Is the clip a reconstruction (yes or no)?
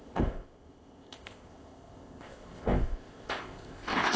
yes